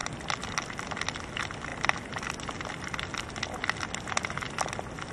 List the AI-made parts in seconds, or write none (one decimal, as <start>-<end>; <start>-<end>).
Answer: none